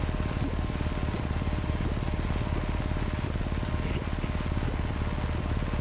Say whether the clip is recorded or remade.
recorded